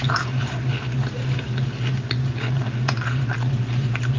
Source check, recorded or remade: recorded